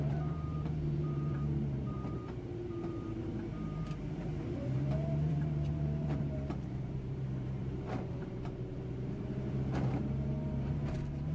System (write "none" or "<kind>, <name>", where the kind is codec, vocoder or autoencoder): vocoder, BigVGAN v2